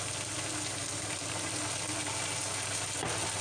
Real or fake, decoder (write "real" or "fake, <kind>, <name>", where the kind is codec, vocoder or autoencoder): real